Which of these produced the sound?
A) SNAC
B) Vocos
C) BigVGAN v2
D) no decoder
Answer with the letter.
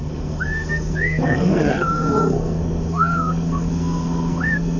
A